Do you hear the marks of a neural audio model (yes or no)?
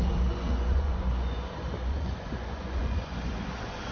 yes